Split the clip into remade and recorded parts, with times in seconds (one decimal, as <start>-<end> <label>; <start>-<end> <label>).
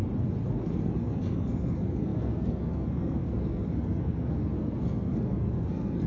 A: 0.0-0.5 recorded; 0.5-6.1 remade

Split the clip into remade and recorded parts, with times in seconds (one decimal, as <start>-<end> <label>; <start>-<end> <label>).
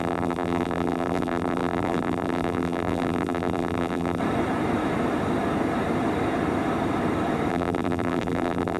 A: 0.0-4.2 remade; 4.2-7.5 recorded; 7.5-8.8 remade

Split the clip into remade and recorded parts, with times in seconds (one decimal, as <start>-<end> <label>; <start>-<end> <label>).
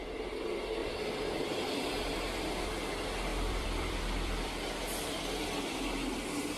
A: 0.0-0.8 recorded; 0.8-1.4 remade; 1.4-3.3 recorded; 3.3-4.6 remade; 4.6-6.6 recorded